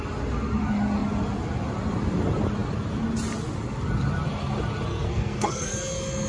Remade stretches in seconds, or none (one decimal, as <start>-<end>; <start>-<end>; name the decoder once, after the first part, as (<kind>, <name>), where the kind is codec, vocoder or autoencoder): 4.9-5.7 (codec, SNAC)